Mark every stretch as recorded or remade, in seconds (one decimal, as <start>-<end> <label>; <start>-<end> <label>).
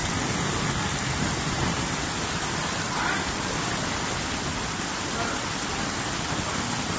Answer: 0.0-7.0 recorded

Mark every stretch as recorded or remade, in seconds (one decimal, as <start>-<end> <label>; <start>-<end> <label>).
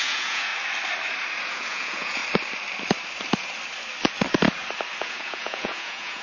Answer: 0.0-0.5 remade; 0.5-1.4 recorded; 1.4-2.2 remade; 2.2-5.0 recorded; 5.0-6.2 remade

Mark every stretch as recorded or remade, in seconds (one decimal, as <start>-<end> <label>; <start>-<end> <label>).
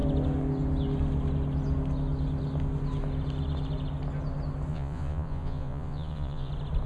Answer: 0.0-4.7 recorded; 4.7-6.5 remade; 6.5-6.9 recorded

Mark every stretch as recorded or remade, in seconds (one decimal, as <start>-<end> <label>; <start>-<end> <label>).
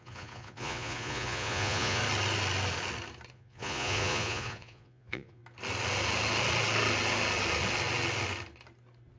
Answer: 0.0-2.0 remade; 2.0-3.3 recorded; 3.3-5.4 remade; 5.4-9.2 recorded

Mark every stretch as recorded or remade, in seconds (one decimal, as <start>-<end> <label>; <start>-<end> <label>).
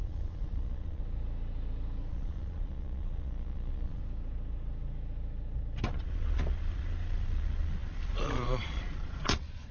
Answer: 0.0-1.0 remade; 1.0-2.1 recorded; 2.1-4.0 remade; 4.0-5.9 recorded; 5.9-9.7 remade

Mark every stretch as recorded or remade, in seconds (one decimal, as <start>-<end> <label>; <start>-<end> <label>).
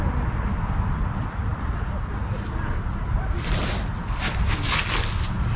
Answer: 0.0-5.6 recorded